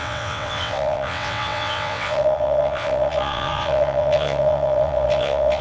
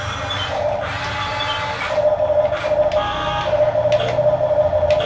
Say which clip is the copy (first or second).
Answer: first